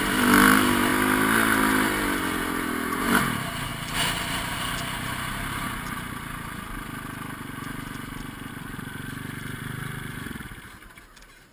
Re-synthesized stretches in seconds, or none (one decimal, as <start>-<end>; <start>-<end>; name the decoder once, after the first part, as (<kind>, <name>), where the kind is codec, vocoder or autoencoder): none